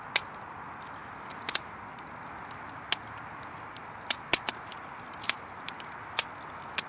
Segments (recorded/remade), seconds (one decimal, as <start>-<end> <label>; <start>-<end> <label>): 0.0-6.9 recorded